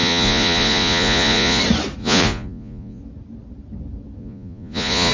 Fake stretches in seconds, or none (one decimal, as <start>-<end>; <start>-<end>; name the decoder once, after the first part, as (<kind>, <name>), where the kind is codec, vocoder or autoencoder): 0.0-1.6 (vocoder, Vocos); 2.0-3.0; 4.2-5.1